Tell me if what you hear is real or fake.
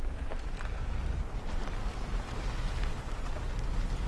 fake